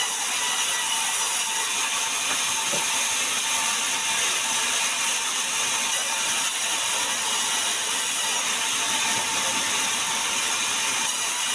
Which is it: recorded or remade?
recorded